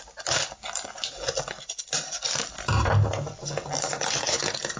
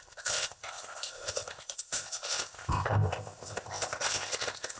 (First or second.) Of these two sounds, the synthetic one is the second